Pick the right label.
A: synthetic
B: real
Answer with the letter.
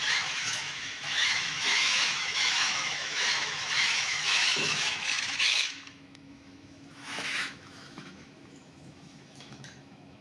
A